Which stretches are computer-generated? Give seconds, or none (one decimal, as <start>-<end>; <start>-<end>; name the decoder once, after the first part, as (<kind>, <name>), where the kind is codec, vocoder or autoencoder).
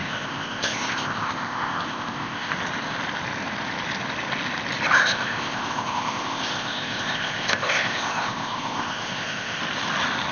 0.0-2.5 (codec, ZipCodec); 5.0-9.6